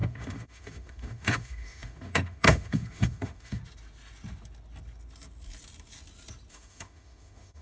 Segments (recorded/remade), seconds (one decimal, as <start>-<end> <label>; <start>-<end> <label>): 0.0-3.6 remade; 3.6-6.5 recorded; 6.5-7.6 remade